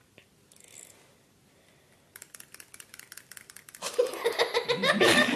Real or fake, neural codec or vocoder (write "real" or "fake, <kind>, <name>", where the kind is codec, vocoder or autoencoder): fake, vocoder, BigVGAN v2